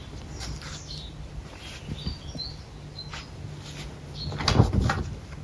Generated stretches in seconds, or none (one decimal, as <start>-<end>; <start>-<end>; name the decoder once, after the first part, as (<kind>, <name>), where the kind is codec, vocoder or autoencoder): none